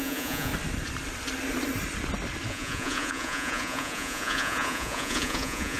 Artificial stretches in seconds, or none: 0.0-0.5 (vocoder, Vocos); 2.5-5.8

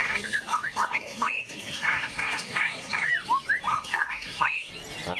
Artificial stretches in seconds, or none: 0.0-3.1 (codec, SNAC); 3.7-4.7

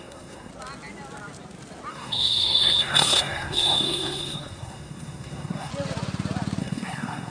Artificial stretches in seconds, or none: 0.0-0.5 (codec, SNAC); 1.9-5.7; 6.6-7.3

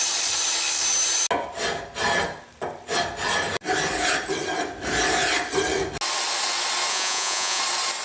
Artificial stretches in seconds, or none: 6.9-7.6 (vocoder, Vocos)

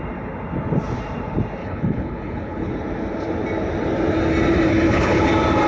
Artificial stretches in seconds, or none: 1.6-2.7 (codec, HILCodec); 4.7-5.3